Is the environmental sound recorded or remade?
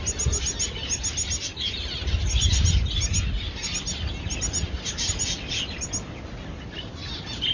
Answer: recorded